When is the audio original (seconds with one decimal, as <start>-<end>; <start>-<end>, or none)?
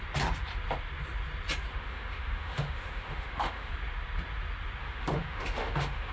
0.0-1.7; 3.7-4.8